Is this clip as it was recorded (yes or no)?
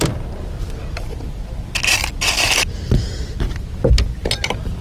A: yes